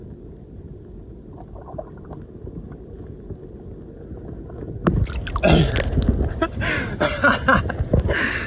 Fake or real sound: real